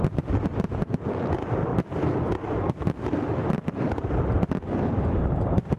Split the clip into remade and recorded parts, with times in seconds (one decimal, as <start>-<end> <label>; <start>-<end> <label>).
0.0-5.8 recorded